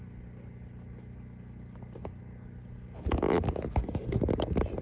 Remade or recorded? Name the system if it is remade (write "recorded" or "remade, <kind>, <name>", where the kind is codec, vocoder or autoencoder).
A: recorded